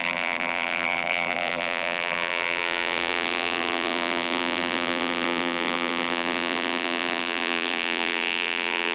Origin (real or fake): fake